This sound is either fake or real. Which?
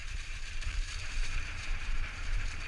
fake